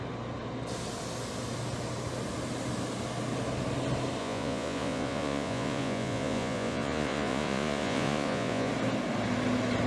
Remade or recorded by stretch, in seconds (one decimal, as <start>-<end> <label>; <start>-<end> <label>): 0.0-4.2 recorded; 4.2-8.7 remade; 8.7-9.9 recorded